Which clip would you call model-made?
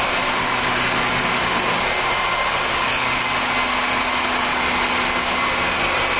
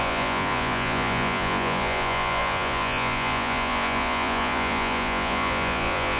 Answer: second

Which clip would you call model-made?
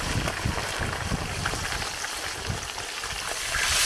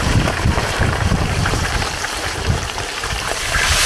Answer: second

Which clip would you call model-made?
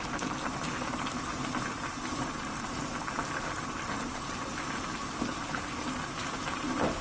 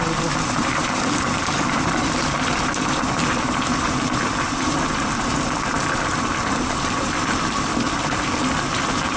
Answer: second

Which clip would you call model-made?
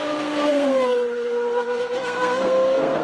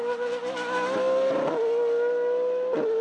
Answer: first